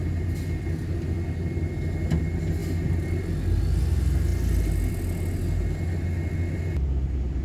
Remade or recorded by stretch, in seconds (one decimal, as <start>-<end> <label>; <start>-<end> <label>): 0.0-7.4 recorded